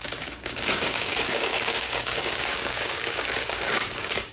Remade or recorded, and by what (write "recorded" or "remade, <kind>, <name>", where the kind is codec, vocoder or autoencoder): remade, codec, DAC